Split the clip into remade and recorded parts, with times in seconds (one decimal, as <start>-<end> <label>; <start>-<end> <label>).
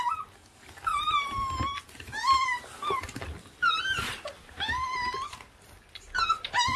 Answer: 0.0-6.8 recorded